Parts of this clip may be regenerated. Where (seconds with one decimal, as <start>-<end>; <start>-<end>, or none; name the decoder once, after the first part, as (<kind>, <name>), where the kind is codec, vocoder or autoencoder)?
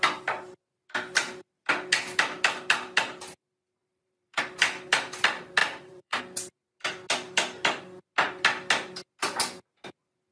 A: 3.8-4.4 (vocoder, BigVGAN v2); 5.6-6.2